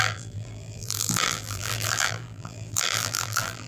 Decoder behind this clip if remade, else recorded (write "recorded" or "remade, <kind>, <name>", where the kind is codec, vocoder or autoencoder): remade, vocoder, BigVGAN v2